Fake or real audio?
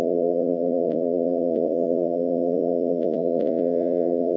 fake